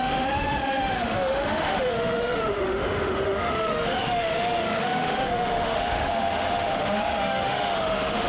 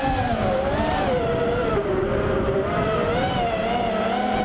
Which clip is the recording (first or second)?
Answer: second